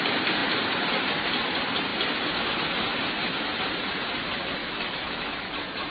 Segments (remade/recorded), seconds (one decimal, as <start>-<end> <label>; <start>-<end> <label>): 0.0-4.6 recorded; 4.6-5.5 remade; 5.5-5.9 recorded